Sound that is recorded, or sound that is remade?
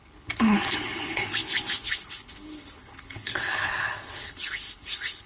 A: remade